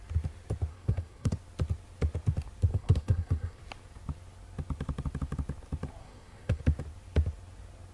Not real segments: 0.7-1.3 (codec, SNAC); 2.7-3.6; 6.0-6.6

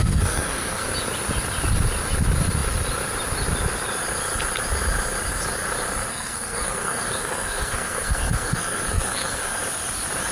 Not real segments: 0.0-0.9 (codec, SNAC); 6.1-9.6

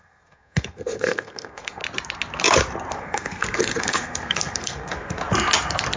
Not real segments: 0.0-1.8 (codec, SNAC); 3.0-5.2

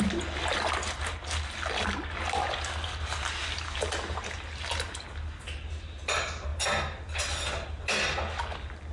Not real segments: none